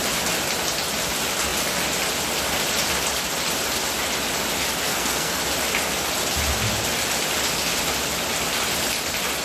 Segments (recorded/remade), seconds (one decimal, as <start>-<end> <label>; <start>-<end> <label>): 0.0-4.9 recorded; 4.9-5.4 remade; 5.4-9.4 recorded